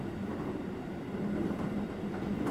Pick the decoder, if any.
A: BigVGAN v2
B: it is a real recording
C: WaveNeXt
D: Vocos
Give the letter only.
A